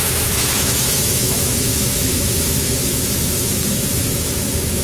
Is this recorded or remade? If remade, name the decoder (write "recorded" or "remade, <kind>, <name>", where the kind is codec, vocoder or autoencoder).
remade, autoencoder, DAC-VAE